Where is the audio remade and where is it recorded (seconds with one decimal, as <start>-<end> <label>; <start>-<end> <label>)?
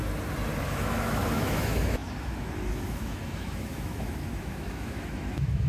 0.0-0.6 recorded; 0.6-5.7 remade